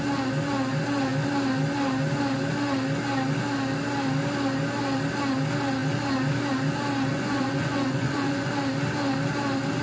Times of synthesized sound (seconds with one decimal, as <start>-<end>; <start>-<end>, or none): 7.1-8.5